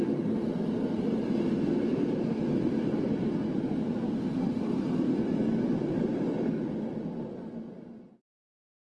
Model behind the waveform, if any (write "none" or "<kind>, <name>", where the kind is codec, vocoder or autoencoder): none